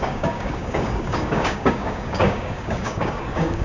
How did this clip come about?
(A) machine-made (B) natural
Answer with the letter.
A